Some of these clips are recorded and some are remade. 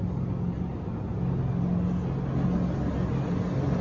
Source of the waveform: recorded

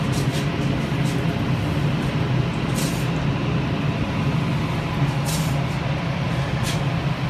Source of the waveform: recorded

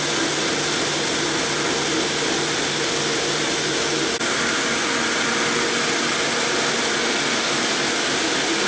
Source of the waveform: recorded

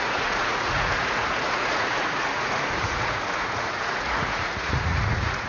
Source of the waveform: remade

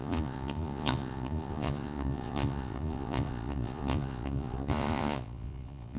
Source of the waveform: remade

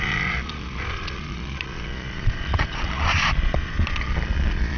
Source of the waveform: remade